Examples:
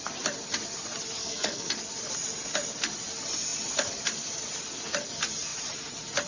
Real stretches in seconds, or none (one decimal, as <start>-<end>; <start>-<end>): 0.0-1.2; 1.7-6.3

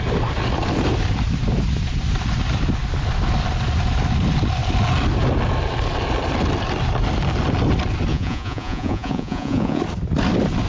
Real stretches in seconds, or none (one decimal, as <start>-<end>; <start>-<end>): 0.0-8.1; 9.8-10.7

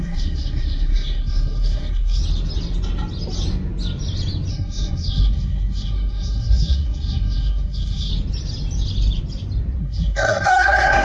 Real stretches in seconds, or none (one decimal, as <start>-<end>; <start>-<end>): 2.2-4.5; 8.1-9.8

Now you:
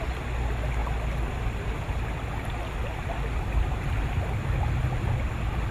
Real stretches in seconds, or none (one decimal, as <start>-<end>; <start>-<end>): 0.0-5.7

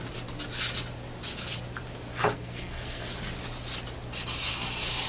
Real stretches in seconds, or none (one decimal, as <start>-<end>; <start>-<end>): 0.0-2.2; 3.1-5.1